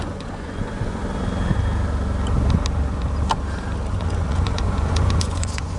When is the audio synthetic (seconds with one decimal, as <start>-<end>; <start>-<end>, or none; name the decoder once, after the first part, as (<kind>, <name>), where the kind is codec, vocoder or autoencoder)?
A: 0.0-1.0 (vocoder, Vocos); 3.9-5.8